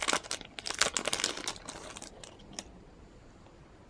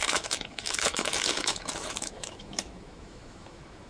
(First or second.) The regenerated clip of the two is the second